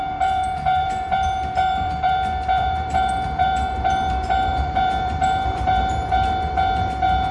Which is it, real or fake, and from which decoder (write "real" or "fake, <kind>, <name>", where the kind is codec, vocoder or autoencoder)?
fake, vocoder, BigVGAN v2